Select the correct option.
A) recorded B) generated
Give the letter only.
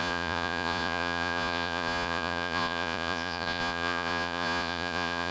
B